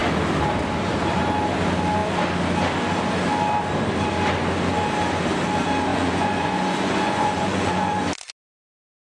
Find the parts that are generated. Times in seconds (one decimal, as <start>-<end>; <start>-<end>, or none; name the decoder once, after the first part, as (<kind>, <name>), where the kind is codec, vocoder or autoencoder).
5.9-8.0 (vocoder, Vocos)